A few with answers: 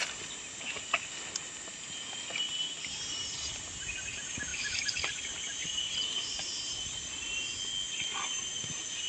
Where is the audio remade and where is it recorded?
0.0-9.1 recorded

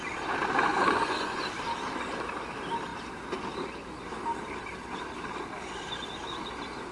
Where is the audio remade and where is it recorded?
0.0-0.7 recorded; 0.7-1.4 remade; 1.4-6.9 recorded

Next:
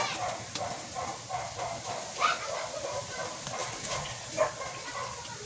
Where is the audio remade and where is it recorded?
0.0-5.5 recorded

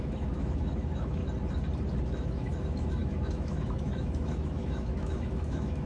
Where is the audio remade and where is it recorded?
0.0-1.2 remade; 1.2-2.0 recorded; 2.0-5.9 remade

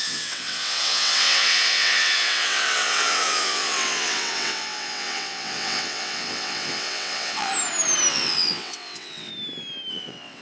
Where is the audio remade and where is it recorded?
0.0-7.5 remade; 7.5-8.1 recorded; 8.1-9.3 remade; 9.3-9.9 recorded; 9.9-10.4 remade

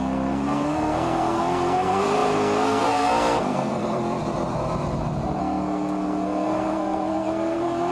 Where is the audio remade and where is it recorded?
0.0-4.0 remade; 4.0-5.4 recorded; 5.4-7.9 remade

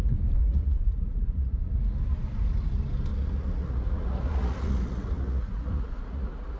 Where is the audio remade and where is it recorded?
0.0-0.4 recorded; 0.4-1.8 remade; 1.8-3.1 recorded; 3.1-6.6 remade

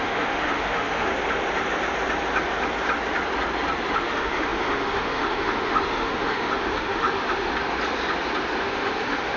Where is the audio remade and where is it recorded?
0.0-1.1 remade; 1.1-4.0 recorded; 4.0-7.5 remade; 7.5-8.6 recorded; 8.6-9.4 remade